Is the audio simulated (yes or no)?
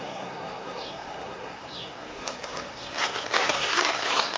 yes